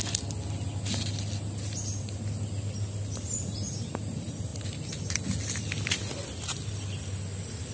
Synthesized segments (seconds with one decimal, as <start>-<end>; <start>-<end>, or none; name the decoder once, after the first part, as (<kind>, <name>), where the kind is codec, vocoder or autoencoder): none